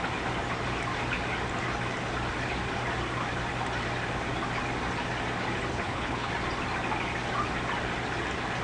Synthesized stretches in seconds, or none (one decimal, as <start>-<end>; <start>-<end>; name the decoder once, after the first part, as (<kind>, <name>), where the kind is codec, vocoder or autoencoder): 5.7-6.3 (codec, HILCodec)